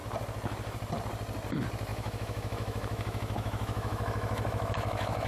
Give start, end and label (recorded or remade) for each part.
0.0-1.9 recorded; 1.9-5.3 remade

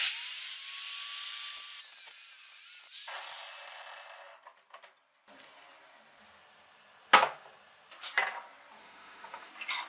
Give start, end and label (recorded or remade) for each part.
0.0-8.8 recorded; 8.8-9.5 remade; 9.5-9.9 recorded

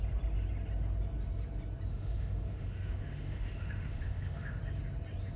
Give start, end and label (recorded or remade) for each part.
0.0-1.9 recorded; 1.9-4.6 remade; 4.6-5.4 recorded

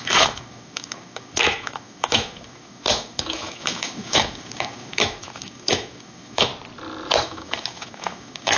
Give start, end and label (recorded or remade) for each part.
0.0-6.5 remade; 6.5-7.2 recorded; 7.2-8.6 remade

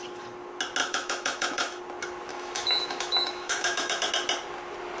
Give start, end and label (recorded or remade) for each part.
0.0-0.8 recorded; 0.8-1.8 remade; 1.8-2.3 recorded; 2.3-4.1 remade; 4.1-5.0 recorded

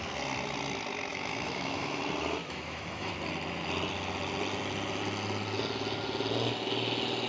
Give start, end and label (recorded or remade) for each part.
0.0-1.1 recorded; 1.1-2.0 remade; 2.0-2.4 recorded; 2.4-3.1 remade; 3.1-7.3 recorded

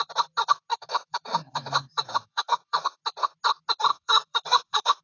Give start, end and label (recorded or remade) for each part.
0.0-0.7 recorded; 0.7-3.0 remade; 3.0-3.9 recorded; 3.9-5.0 remade